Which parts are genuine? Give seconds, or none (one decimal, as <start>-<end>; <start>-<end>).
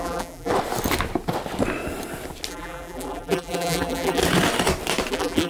0.5-2.5; 4.2-5.1